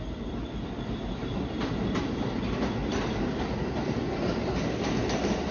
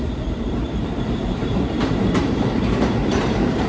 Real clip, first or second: first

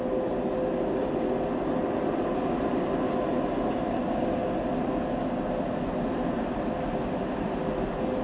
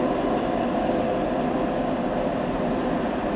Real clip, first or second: first